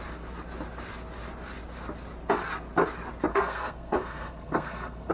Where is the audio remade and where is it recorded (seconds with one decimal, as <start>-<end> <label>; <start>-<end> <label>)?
0.0-3.3 recorded; 3.3-5.1 remade